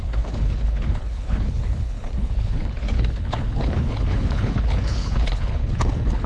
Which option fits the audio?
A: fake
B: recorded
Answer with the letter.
A